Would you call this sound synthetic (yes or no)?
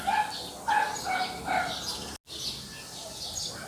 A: no